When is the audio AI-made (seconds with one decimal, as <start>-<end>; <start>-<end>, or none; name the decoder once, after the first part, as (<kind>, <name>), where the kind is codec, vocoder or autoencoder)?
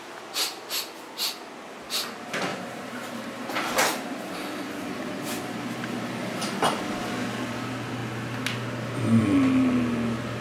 2.5-6.1 (vocoder, BigVGAN v2)